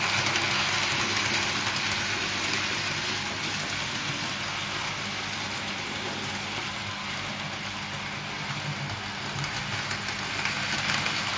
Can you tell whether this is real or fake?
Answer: real